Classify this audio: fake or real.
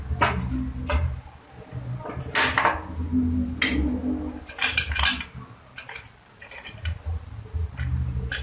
real